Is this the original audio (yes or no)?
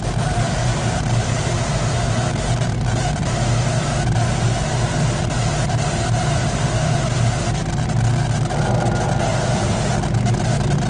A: yes